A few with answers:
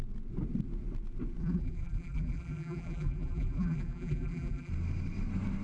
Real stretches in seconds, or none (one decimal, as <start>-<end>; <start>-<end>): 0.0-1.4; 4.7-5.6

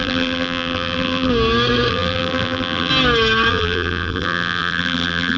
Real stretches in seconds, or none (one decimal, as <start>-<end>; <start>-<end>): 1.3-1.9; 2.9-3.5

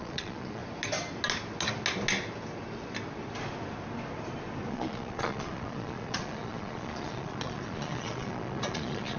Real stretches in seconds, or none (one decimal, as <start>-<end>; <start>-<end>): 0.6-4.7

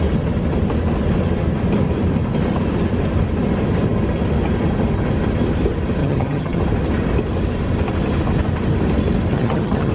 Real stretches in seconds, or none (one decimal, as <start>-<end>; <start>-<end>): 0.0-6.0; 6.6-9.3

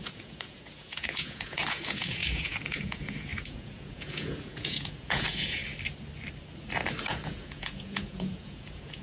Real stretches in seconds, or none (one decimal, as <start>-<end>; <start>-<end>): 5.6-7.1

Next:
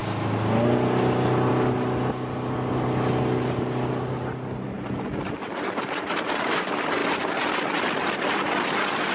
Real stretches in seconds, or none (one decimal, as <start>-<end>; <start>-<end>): 0.0-9.1

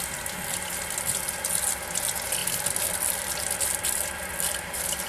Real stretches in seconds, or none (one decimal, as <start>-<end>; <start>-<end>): 0.0-5.1